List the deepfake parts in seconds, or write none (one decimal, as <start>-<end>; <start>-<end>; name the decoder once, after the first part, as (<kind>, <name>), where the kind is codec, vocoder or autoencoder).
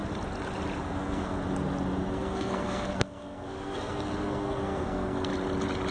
0.8-1.4 (codec, SNAC); 2.1-5.3